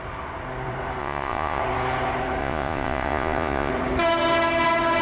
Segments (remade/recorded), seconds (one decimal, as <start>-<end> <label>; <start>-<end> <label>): 0.0-1.0 recorded; 1.0-1.6 remade; 1.6-2.4 recorded; 2.4-3.7 remade; 3.7-5.0 recorded